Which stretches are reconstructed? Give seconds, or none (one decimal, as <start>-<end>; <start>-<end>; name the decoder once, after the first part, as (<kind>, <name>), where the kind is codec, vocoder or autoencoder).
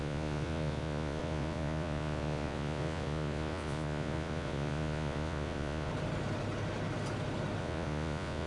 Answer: 0.0-5.9 (vocoder, Vocos); 7.6-8.5